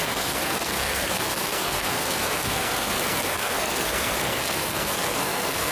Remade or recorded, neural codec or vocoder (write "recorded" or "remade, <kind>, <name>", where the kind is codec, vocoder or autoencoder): remade, codec, SNAC